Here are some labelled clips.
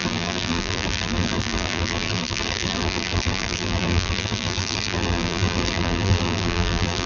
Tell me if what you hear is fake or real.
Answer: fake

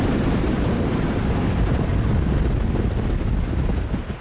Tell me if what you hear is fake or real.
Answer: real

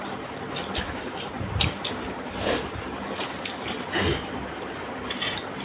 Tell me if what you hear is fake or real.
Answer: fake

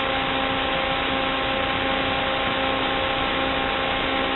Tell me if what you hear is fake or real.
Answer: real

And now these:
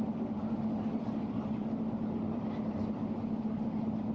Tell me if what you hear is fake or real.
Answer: fake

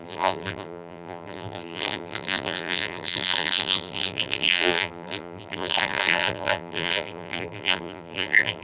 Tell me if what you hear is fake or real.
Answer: fake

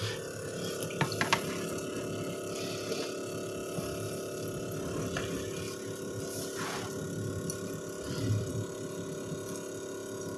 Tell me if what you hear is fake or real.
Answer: fake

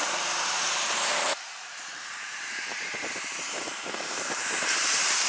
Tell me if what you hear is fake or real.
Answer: fake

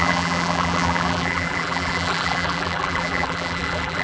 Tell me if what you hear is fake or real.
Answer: fake